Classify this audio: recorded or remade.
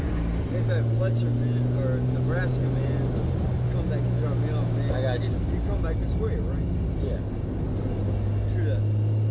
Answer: recorded